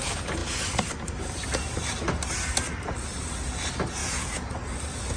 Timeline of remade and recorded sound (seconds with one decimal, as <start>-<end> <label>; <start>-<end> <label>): 0.0-4.0 recorded; 4.0-4.5 remade; 4.5-5.2 recorded

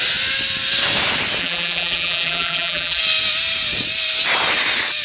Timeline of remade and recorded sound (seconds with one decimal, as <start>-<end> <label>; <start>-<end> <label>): 0.0-1.4 recorded; 1.4-3.0 remade; 3.0-5.0 recorded

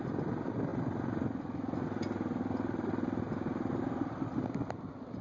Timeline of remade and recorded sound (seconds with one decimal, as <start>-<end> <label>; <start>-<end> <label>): 0.0-5.2 recorded

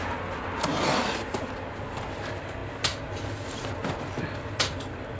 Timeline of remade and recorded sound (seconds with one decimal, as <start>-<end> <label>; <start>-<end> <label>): 0.0-5.2 recorded

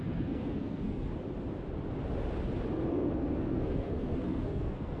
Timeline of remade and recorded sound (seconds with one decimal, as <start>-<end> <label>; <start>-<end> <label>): 0.0-1.1 remade; 1.1-2.9 recorded; 2.9-5.0 remade

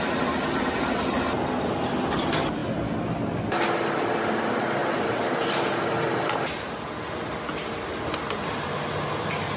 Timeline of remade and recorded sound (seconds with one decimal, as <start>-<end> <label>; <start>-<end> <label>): 0.0-9.6 recorded